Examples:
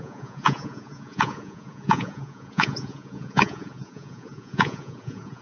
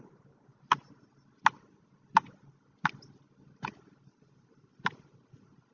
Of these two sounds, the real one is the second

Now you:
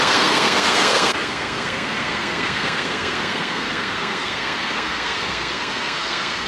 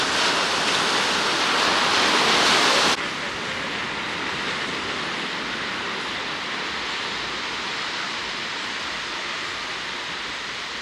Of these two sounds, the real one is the second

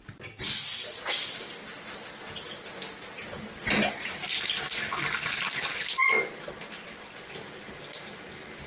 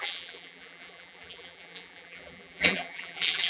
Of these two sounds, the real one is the first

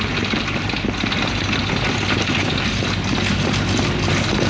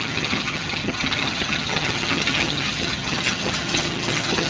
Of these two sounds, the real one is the first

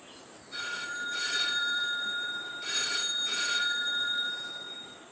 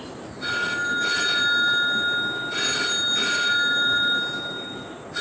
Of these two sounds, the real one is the second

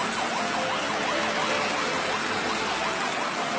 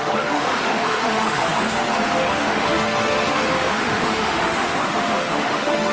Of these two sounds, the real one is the first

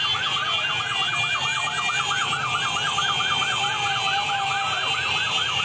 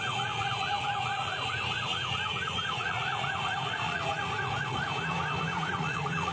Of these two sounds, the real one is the first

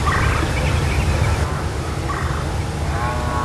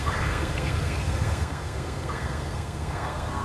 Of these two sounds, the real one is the first